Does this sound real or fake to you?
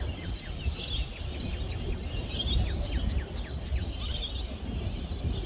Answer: real